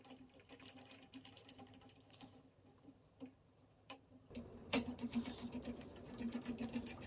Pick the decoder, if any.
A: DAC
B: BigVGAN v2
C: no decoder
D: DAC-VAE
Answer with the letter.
B